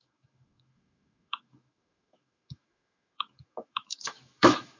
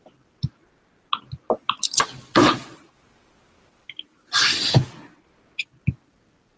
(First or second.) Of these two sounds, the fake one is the first